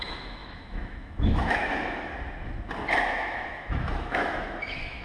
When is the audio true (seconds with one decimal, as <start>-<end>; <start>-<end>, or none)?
2.1-3.0